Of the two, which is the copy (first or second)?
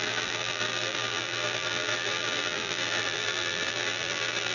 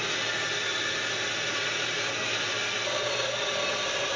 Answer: first